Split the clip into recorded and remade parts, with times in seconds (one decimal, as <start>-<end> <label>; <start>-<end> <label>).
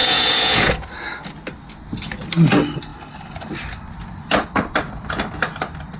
0.0-0.7 remade; 0.7-6.0 recorded